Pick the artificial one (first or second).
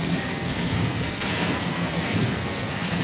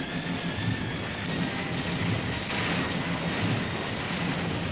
first